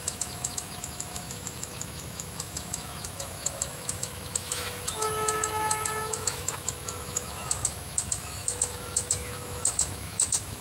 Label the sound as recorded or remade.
remade